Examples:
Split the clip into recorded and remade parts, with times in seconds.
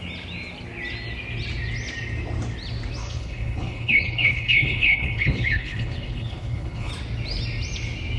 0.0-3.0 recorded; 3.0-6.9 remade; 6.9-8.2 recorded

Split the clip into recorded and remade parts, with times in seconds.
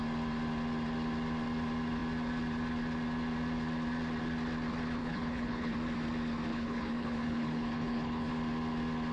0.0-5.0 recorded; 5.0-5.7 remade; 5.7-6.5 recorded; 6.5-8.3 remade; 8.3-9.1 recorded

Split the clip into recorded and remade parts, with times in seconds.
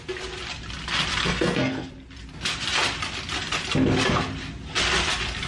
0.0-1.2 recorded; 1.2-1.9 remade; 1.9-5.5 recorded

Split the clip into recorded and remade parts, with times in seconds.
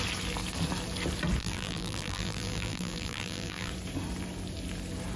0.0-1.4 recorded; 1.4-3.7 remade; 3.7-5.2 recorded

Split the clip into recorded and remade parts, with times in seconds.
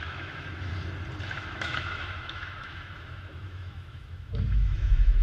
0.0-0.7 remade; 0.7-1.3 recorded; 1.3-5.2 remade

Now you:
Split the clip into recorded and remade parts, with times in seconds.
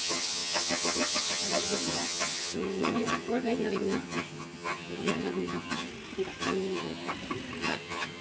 0.0-5.9 remade; 5.9-6.4 recorded; 6.4-7.1 remade; 7.1-7.6 recorded; 7.6-8.2 remade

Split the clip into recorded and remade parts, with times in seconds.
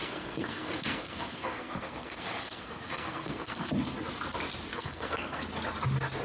0.0-3.7 remade; 3.7-4.7 recorded; 4.7-5.4 remade; 5.4-6.2 recorded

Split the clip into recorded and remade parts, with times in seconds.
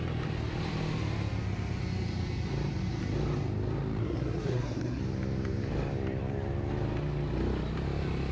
0.0-4.0 recorded; 4.0-5.0 remade; 5.0-8.3 recorded